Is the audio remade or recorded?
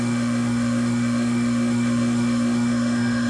remade